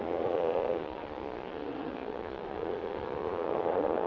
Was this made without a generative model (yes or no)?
no